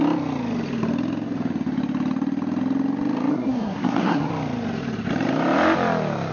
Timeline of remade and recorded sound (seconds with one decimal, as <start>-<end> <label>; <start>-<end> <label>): 0.0-3.3 recorded; 3.3-4.3 remade; 4.3-6.3 recorded

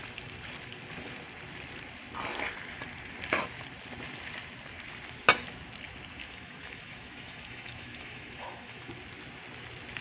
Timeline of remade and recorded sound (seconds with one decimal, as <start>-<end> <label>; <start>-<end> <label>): 0.0-6.2 recorded; 6.2-8.9 remade; 8.9-10.0 recorded

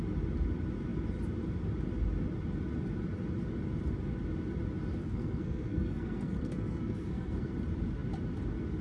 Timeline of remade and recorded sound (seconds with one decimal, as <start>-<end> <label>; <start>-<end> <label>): 0.0-5.0 recorded; 5.0-7.5 remade; 7.5-8.8 recorded